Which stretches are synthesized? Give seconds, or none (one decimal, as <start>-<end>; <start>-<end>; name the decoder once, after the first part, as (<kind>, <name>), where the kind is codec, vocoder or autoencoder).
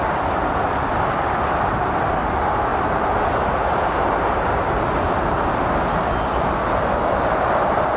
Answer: 2.7-4.8 (vocoder, BigVGAN v2)